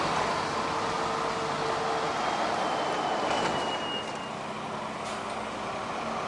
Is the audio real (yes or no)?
yes